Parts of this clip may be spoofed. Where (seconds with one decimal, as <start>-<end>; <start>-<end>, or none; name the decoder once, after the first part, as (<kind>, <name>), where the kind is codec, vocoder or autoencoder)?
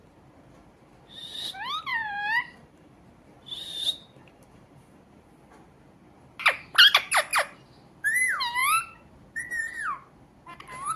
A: 1.9-3.0 (vocoder, BigVGAN v2); 3.7-5.0